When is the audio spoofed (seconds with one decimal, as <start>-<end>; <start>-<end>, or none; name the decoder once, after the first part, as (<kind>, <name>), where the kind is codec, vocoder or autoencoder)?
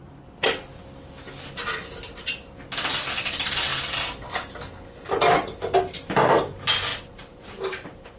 6.9-8.2 (vocoder, BigVGAN v2)